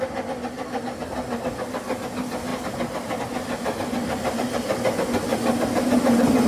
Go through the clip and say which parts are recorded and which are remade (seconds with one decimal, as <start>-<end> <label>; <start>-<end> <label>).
0.0-5.3 recorded; 5.3-6.0 remade; 6.0-6.5 recorded